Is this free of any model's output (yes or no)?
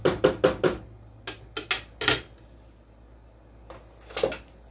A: yes